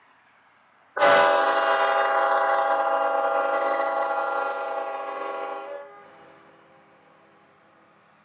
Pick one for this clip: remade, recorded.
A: recorded